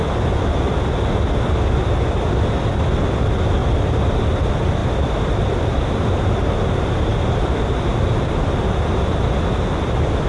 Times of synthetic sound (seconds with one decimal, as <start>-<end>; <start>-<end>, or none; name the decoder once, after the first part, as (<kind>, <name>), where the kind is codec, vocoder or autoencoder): 3.6-4.3 (vocoder, BigVGAN v2); 4.8-6.2; 7.1-10.3